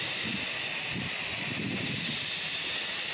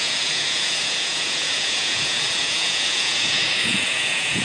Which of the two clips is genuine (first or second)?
first